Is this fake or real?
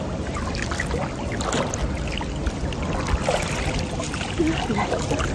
real